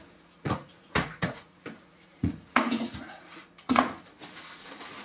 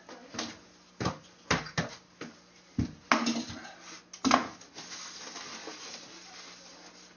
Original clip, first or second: second